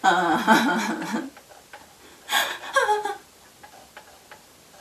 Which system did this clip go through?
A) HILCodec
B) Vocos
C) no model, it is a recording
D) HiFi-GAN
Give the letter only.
C